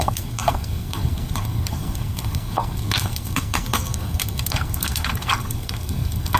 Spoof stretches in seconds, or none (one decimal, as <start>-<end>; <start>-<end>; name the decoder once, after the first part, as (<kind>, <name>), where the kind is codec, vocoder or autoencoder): 0.0-6.4 (codec, SNAC)